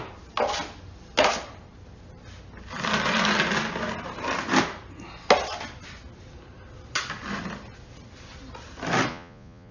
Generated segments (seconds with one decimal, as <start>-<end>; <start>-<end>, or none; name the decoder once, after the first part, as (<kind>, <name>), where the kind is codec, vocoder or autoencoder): 9.1-9.7 (vocoder, Vocos)